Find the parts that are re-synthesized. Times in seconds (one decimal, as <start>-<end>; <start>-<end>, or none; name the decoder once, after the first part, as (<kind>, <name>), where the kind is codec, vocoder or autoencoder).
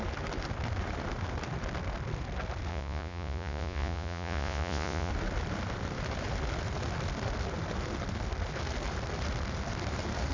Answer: 2.7-5.1 (vocoder, Vocos)